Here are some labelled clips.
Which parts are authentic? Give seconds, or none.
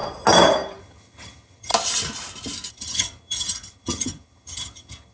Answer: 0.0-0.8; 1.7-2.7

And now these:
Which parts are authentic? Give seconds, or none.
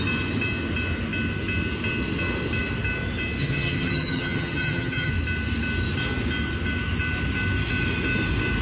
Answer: 0.0-3.4; 5.1-8.6